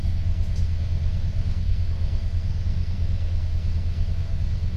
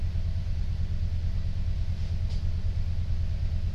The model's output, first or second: first